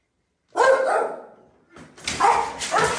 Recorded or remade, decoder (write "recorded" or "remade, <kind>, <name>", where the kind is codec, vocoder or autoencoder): recorded